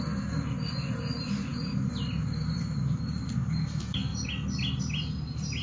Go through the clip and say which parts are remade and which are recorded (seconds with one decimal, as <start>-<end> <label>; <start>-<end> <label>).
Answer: 0.0-5.6 recorded